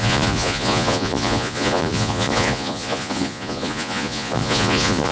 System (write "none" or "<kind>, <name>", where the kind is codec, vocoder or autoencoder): vocoder, Vocos